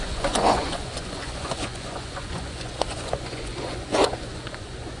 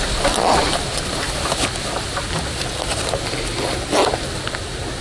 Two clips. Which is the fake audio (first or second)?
first